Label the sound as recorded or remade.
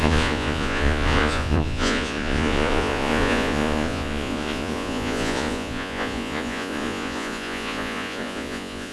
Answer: remade